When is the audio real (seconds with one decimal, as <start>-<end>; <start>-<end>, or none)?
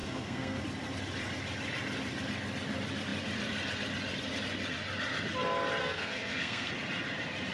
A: 0.6-5.8; 6.7-7.5